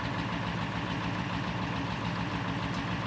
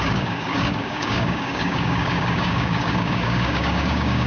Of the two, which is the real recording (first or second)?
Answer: first